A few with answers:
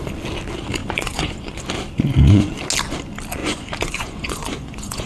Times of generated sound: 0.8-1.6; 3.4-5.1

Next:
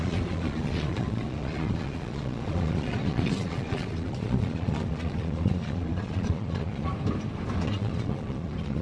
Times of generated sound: 0.0-6.9; 7.6-8.8